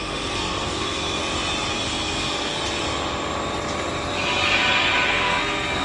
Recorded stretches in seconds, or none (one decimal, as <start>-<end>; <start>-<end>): 1.2-1.7; 2.5-5.1